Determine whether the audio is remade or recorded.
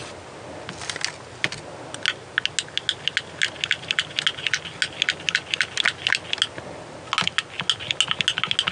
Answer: recorded